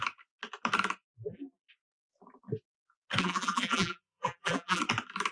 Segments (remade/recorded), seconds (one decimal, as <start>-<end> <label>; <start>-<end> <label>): 0.0-1.2 recorded; 1.2-1.7 remade; 1.7-3.2 recorded; 3.2-4.8 remade; 4.8-5.3 recorded